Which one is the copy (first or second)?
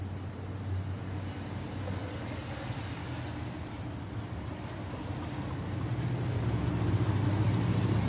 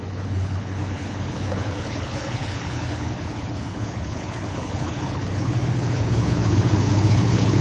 second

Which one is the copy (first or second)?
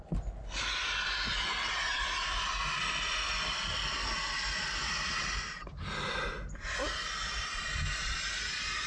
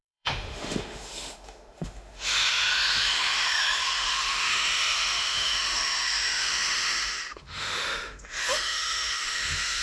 second